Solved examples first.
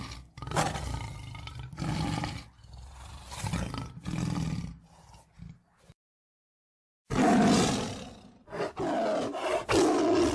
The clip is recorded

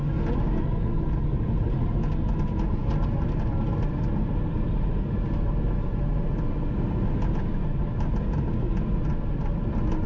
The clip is recorded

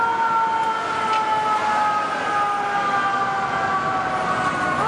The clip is recorded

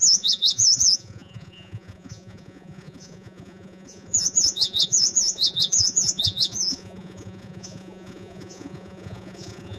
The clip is remade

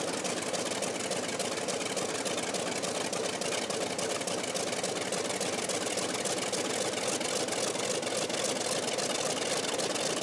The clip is recorded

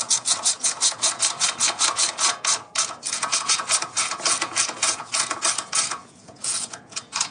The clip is remade